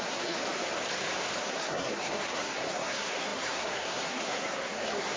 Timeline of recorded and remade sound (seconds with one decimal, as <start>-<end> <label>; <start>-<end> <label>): 0.0-0.4 remade; 0.4-1.4 recorded; 1.4-5.2 remade